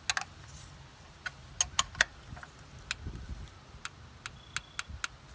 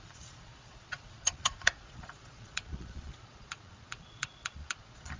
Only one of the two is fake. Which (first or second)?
second